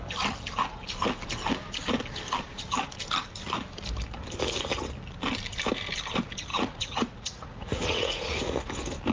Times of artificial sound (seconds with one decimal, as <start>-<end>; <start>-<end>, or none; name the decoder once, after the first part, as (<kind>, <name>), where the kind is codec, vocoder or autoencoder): 6.5-8.7 (vocoder, Vocos)